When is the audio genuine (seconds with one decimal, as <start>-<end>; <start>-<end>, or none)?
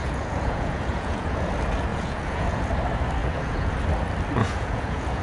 1.5-1.9; 2.7-3.2; 3.7-4.4